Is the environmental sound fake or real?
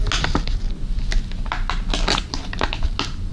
real